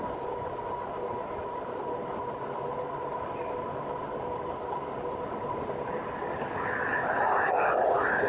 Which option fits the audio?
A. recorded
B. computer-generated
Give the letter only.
A